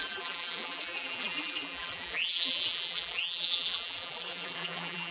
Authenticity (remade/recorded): remade